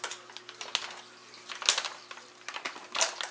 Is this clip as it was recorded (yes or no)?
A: yes